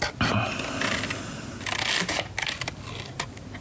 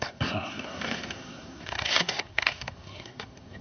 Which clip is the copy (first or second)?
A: second